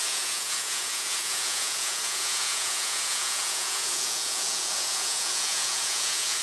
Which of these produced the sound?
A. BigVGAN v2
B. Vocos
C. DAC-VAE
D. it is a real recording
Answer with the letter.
B